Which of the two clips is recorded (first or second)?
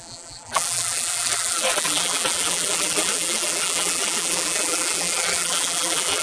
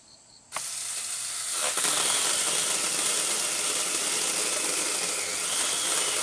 second